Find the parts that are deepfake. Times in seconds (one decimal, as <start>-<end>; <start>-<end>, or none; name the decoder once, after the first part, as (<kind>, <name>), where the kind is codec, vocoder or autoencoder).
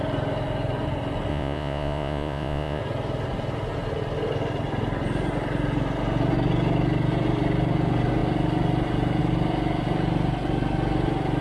1.3-2.8 (vocoder, Vocos)